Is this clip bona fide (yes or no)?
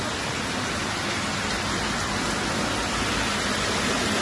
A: yes